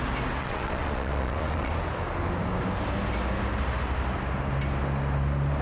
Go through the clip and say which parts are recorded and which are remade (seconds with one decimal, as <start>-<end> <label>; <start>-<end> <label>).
0.0-0.4 recorded; 0.4-1.7 remade; 1.7-5.6 recorded